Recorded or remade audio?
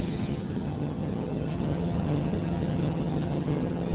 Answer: remade